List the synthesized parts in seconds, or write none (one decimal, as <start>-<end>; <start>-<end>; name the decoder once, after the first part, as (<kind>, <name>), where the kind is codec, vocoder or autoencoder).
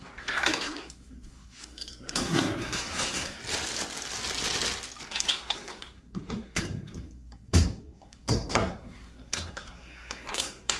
0.0-3.4 (codec, SNAC); 5.1-10.8